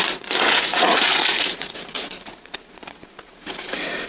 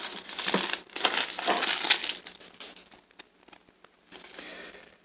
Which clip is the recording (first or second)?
second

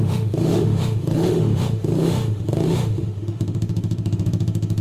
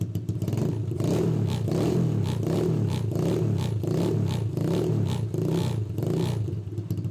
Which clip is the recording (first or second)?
second